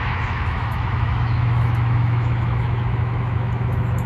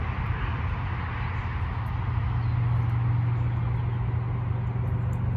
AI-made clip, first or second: first